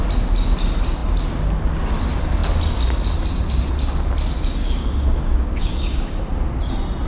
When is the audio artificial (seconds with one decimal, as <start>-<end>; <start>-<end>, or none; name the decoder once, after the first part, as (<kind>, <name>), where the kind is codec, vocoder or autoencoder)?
4.6-6.2 (codec, DAC)